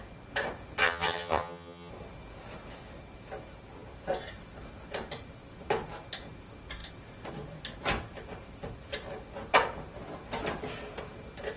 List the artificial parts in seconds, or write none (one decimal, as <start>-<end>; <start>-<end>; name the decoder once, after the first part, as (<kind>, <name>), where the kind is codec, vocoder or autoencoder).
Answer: 0.8-1.9 (vocoder, HiFi-GAN)